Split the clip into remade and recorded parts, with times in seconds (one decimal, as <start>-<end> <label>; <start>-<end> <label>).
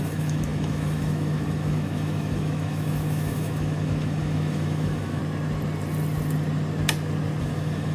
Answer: 0.0-5.2 remade; 5.2-7.4 recorded; 7.4-7.9 remade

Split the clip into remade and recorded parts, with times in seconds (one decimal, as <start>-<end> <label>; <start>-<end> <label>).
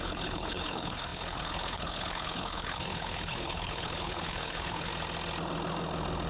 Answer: 0.0-4.9 remade; 4.9-6.3 recorded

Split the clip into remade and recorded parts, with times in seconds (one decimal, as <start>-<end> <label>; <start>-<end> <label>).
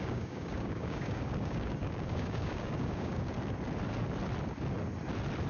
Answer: 0.0-3.3 remade; 3.3-5.5 recorded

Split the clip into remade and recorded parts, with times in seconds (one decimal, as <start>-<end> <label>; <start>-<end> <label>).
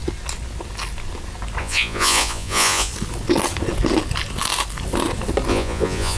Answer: 0.0-1.6 recorded; 1.6-2.9 remade; 2.9-5.5 recorded; 5.5-6.2 remade